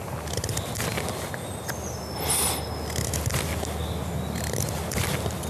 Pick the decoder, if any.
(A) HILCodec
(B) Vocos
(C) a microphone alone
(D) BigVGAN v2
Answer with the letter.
C